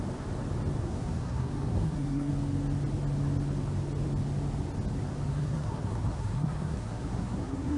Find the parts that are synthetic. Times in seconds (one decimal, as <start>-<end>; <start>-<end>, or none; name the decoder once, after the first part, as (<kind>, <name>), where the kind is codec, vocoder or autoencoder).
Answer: 0.8-2.3 (codec, SNAC); 5.3-7.8